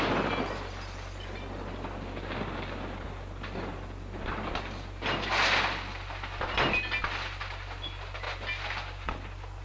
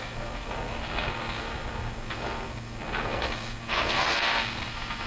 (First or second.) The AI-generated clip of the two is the second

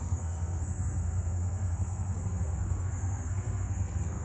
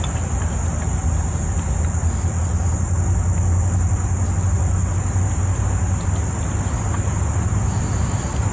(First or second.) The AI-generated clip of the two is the first